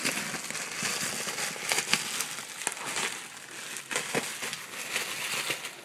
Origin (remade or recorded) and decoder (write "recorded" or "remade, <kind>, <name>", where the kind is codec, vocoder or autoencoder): recorded